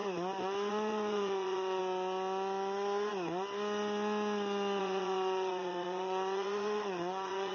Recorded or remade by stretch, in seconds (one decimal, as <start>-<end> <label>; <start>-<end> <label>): 0.0-0.7 recorded; 0.7-1.8 remade; 1.8-4.8 recorded; 4.8-7.5 remade